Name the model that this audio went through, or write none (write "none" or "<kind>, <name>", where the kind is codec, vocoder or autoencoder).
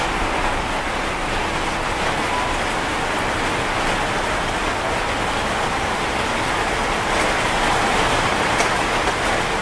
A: none